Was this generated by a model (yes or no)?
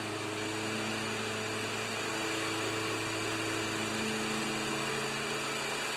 no